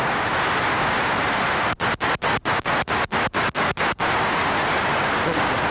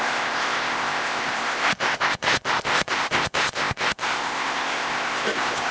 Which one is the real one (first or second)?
first